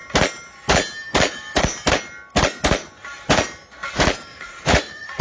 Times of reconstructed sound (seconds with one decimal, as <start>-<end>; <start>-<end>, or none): 4.3-5.2